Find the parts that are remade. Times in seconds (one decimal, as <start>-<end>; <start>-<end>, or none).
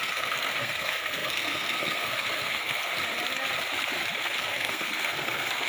0.0-2.9; 4.2-5.7